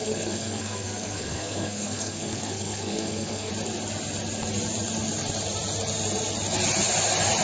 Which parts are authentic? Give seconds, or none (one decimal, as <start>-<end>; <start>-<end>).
3.5-7.4